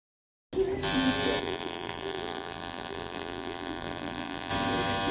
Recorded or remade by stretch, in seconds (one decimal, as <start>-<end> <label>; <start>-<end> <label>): 0.0-1.4 recorded; 1.4-4.5 remade; 4.5-5.1 recorded